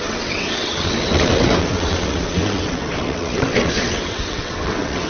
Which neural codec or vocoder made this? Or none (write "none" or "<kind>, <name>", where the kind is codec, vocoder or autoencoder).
vocoder, WaveNeXt